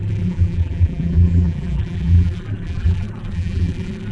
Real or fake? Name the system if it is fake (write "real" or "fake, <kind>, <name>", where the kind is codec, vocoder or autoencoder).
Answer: fake, vocoder, BigVGAN v2